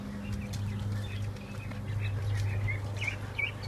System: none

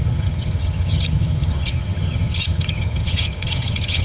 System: vocoder, HiFi-GAN